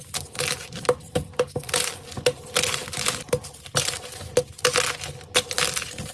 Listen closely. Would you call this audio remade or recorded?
recorded